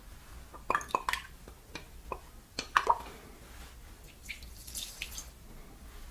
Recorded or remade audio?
recorded